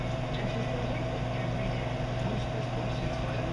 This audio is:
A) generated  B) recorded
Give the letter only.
B